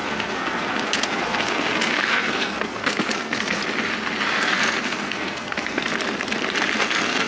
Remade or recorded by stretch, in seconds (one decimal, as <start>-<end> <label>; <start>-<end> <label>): 0.0-3.6 remade; 3.6-4.3 recorded; 4.3-5.9 remade; 5.9-6.8 recorded; 6.8-7.3 remade